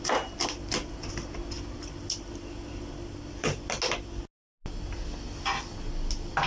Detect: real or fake real